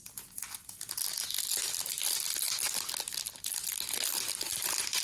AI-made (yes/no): no